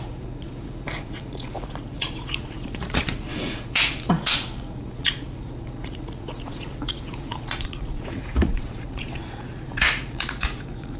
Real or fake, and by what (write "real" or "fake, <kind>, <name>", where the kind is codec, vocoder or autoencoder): fake, vocoder, Vocos